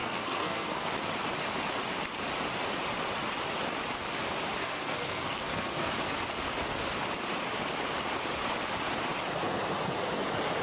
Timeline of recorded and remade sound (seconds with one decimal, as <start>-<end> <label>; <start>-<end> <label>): 0.0-0.9 remade; 0.9-4.6 recorded; 4.6-5.9 remade; 5.9-10.6 recorded